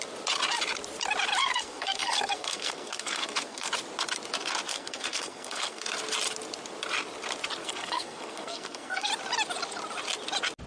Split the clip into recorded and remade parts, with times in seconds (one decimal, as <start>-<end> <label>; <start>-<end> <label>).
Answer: 0.0-1.4 recorded; 1.4-3.7 remade; 3.7-4.7 recorded; 4.7-5.9 remade; 5.9-7.6 recorded; 7.6-9.1 remade; 9.1-10.7 recorded